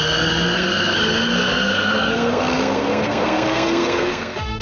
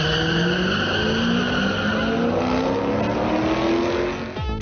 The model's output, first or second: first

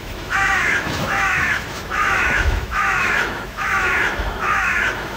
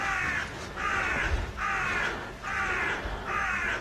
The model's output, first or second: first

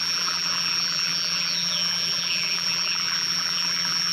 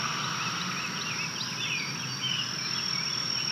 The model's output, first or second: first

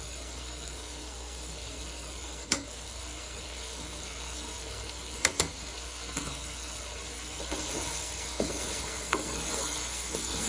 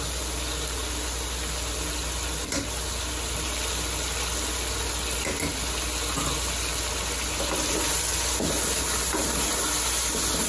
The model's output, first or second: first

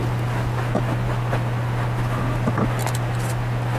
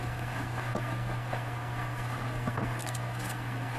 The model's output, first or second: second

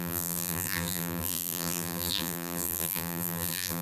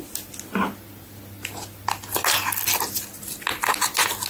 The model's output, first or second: first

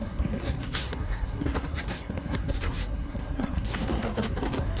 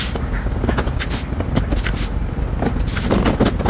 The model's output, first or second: first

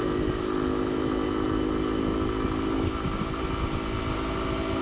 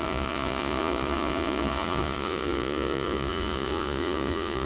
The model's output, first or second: second